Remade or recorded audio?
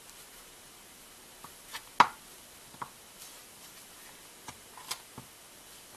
recorded